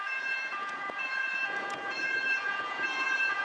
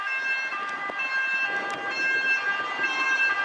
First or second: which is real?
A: second